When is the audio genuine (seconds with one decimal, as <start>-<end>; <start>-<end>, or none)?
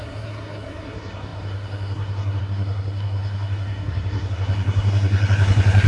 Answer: none